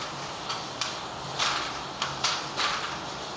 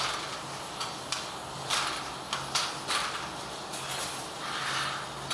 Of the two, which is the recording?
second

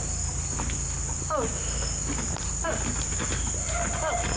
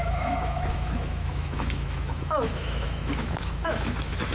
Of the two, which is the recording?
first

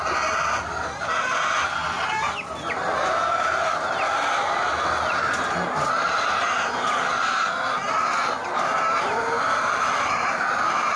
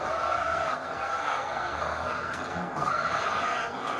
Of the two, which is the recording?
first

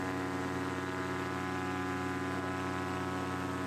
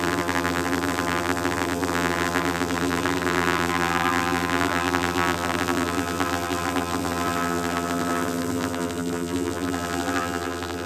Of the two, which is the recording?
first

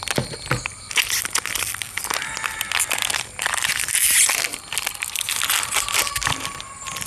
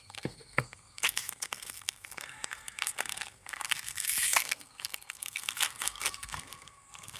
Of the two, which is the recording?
first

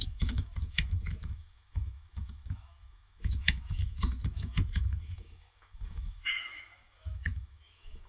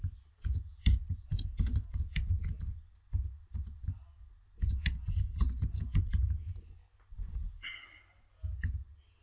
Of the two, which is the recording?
second